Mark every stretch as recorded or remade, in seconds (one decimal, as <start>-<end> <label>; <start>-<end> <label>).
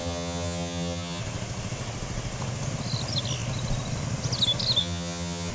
0.0-1.2 remade; 1.2-4.8 recorded; 4.8-5.5 remade